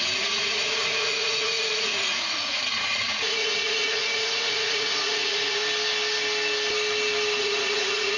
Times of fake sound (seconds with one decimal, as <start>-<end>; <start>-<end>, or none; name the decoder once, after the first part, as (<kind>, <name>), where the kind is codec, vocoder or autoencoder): 0.0-5.6 (vocoder, Vocos); 7.4-8.2